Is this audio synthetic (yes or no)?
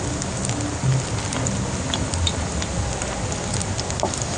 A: no